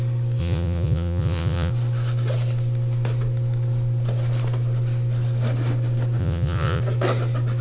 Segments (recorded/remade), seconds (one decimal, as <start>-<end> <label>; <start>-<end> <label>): 0.0-0.4 recorded; 0.4-1.7 remade; 1.7-6.2 recorded; 6.2-6.8 remade; 6.8-7.6 recorded